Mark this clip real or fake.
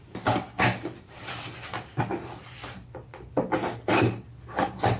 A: real